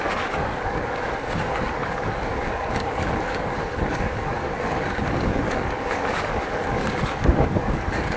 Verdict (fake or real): fake